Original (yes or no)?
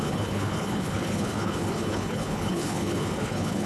no